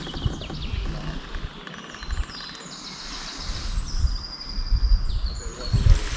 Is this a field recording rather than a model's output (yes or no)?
yes